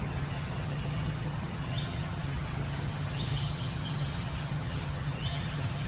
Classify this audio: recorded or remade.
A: remade